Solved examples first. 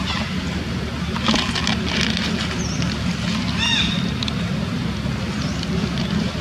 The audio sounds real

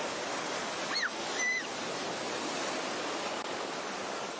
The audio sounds real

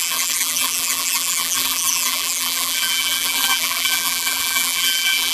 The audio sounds fake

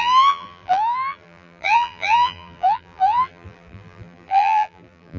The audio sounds fake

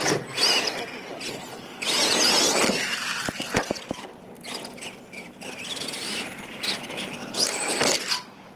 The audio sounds real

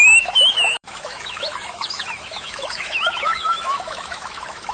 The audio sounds fake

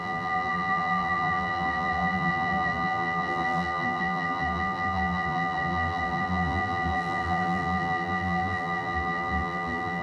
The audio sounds fake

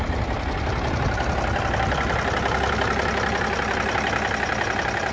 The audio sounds real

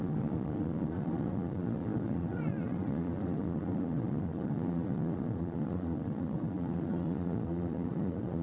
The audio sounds fake